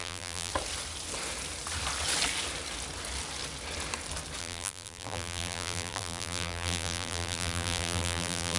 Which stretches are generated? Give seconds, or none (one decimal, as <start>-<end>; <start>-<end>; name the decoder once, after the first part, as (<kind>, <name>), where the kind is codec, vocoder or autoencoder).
0.0-0.5 (vocoder, BigVGAN v2); 4.4-8.6